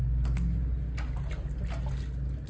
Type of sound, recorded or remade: recorded